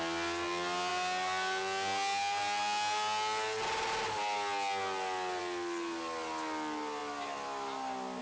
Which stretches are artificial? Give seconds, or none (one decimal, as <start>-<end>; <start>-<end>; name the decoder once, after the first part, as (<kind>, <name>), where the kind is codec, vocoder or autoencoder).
none